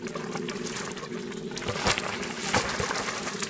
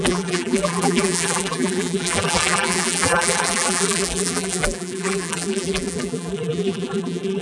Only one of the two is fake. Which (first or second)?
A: second